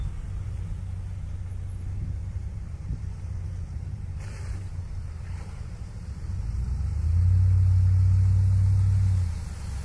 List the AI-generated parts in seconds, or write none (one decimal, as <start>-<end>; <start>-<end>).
2.2-6.3